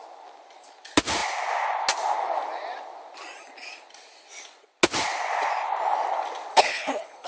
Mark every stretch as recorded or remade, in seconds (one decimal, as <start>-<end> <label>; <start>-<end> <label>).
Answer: 0.0-6.5 recorded; 6.5-7.3 remade